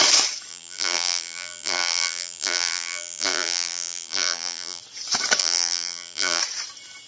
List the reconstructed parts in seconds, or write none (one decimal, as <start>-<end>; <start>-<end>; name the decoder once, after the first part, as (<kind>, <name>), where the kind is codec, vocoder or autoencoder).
0.5-4.8 (vocoder, BigVGAN v2); 5.4-6.4